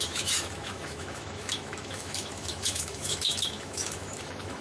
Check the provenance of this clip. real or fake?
fake